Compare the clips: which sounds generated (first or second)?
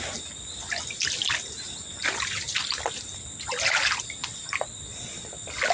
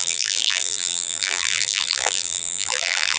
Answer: second